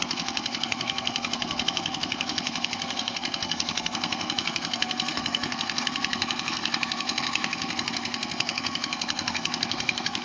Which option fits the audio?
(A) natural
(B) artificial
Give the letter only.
B